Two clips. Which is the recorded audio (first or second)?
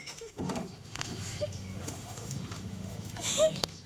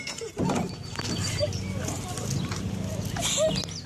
second